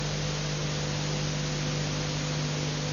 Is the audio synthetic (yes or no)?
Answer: no